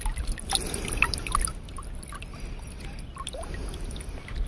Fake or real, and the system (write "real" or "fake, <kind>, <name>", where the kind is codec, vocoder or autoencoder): real